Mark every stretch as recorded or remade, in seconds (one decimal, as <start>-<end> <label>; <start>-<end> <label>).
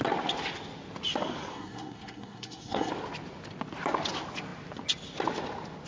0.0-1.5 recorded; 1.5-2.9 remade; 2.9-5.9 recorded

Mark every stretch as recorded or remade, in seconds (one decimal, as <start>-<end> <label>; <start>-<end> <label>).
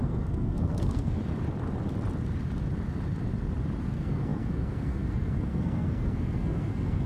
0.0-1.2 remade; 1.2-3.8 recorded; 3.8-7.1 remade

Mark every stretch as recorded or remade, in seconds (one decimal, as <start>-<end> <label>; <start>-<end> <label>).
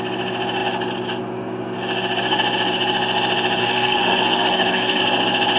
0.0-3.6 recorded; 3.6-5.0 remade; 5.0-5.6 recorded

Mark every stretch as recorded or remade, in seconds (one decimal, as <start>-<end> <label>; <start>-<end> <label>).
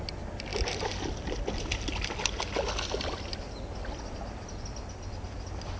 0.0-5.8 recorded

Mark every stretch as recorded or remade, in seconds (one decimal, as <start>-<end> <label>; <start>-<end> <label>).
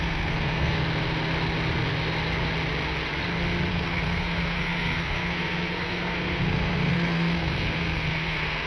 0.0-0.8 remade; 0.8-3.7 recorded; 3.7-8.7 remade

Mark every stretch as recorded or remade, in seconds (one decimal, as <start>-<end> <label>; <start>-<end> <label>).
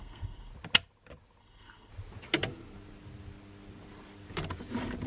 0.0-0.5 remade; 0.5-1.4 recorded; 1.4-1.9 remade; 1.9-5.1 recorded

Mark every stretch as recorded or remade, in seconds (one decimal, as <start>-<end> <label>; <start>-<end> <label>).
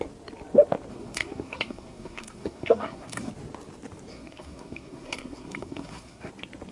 0.0-0.9 recorded; 0.9-3.3 remade; 3.3-4.1 recorded; 4.1-6.3 remade; 6.3-6.7 recorded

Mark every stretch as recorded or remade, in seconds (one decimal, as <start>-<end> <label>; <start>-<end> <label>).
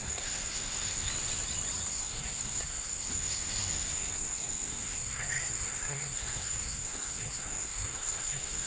0.0-1.1 remade; 1.1-1.9 recorded; 1.9-8.7 remade